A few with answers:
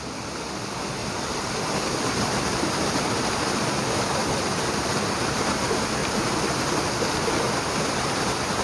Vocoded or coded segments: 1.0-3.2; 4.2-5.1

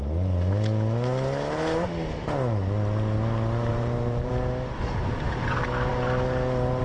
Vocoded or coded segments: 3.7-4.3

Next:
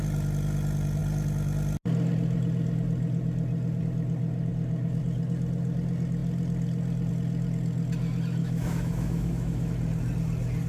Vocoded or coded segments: 8.4-9.7

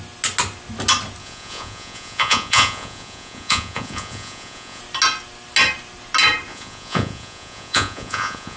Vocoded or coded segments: 1.2-4.8; 6.5-8.6

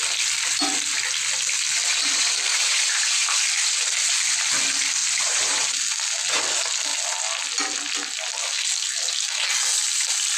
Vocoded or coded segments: 1.9-3.4; 5.0-5.8

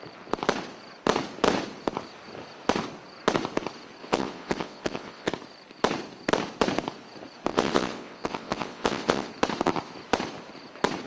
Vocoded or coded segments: 4.0-5.3; 7.5-9.3

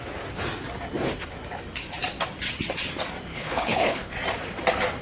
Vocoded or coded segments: 3.3-4.1